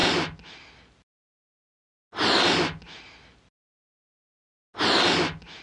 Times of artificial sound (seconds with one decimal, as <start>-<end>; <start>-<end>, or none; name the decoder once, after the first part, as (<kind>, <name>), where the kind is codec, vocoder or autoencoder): none